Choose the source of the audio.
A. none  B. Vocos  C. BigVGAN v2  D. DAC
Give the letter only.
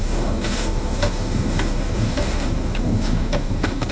D